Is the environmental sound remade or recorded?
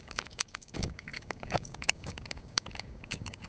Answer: remade